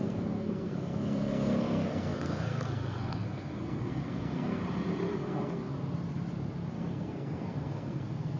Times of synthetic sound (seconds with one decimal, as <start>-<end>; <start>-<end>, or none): 0.0-4.6; 5.1-5.7; 6.7-8.4